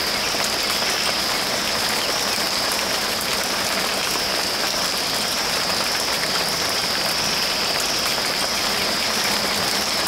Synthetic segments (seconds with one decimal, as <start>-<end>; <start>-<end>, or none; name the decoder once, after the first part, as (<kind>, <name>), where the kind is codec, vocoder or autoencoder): none